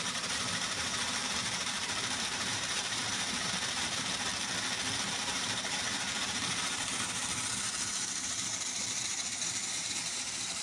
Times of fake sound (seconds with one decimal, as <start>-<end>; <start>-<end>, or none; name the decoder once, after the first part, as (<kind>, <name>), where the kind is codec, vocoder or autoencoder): 0.0-4.3 (vocoder, BigVGAN v2); 5.1-10.6